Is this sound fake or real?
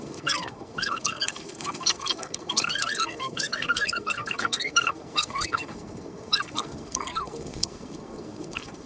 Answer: fake